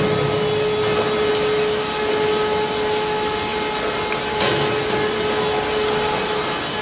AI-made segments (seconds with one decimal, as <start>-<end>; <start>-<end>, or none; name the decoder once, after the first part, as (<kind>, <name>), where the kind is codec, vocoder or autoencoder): none